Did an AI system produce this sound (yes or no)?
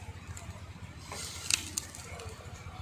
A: no